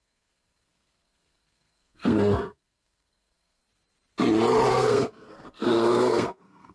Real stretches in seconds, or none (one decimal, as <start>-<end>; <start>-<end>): 3.6-4.7